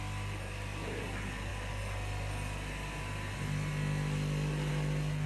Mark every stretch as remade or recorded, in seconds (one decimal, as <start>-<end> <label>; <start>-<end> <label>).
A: 0.0-5.3 recorded